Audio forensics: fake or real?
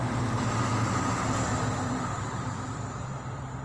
fake